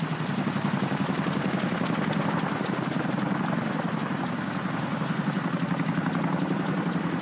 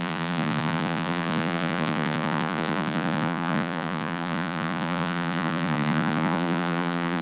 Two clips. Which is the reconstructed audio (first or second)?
second